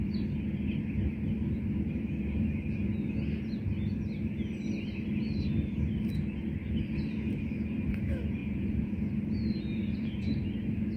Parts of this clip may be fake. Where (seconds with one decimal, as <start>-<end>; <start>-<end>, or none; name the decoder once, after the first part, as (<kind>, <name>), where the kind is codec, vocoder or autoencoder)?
8.4-9.1 (vocoder, Vocos)